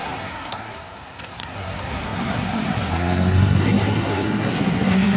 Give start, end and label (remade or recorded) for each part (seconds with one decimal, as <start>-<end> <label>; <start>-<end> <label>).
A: 0.0-5.2 remade